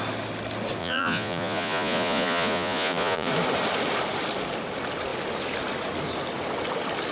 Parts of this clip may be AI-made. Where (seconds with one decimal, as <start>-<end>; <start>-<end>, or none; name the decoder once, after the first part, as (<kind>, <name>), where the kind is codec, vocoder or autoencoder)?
0.8-3.3 (vocoder, Vocos)